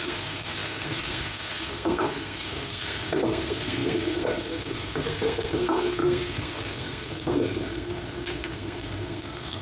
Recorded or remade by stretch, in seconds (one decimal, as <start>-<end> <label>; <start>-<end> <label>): 0.0-9.6 remade